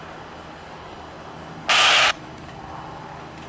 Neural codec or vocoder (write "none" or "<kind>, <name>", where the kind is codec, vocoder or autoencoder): none